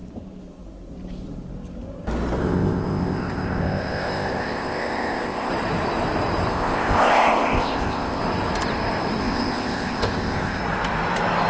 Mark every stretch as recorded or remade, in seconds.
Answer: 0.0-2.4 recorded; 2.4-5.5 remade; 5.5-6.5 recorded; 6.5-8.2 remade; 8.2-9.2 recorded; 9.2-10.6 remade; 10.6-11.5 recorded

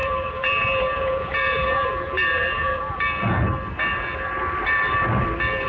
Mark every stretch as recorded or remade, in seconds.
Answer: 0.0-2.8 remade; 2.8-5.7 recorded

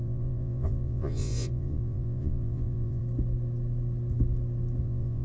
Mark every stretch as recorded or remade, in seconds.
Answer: 0.0-3.0 remade; 3.0-4.8 recorded; 4.8-5.2 remade